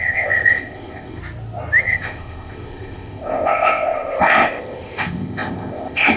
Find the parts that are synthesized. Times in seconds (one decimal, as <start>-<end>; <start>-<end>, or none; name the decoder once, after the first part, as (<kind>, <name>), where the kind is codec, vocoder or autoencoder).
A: 0.0-1.2 (codec, ZipCodec); 1.8-6.2